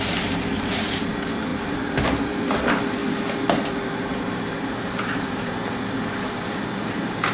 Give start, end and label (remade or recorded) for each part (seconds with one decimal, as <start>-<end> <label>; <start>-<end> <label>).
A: 0.0-3.0 remade; 3.0-3.7 recorded; 3.7-7.3 remade